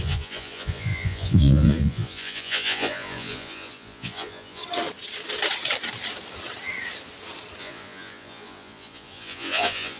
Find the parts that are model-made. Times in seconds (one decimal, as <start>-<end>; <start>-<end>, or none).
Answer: 0.0-4.6; 7.6-10.0